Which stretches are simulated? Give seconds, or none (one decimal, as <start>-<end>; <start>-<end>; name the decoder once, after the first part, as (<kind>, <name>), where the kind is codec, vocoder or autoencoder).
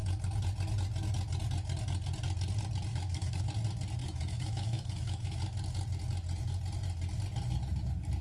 2.9-3.4 (autoencoder, DAC-VAE); 4.0-5.4